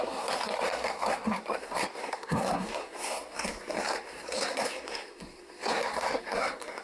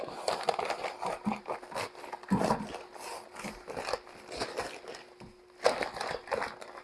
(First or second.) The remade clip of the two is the first